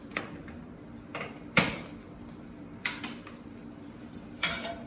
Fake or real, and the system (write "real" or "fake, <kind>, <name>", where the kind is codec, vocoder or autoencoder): fake, vocoder, BigVGAN v2